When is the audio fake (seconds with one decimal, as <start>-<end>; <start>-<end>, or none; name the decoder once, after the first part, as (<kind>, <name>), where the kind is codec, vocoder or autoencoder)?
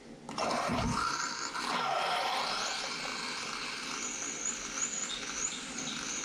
none